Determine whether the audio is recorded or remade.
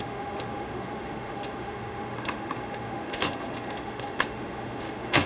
remade